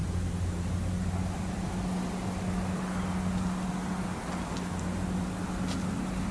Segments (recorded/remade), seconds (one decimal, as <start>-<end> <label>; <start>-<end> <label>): 0.0-6.3 recorded